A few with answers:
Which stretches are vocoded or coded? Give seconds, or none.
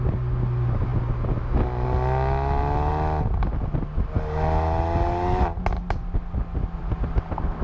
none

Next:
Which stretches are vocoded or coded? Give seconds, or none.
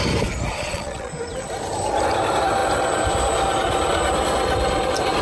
0.5-1.1 (vocoder, Vocos)